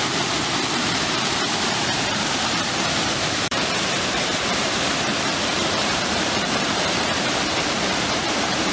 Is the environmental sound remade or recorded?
remade